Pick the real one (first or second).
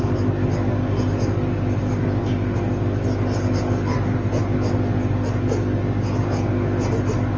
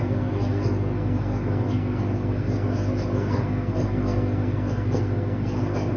first